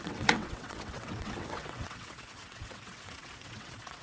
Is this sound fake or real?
fake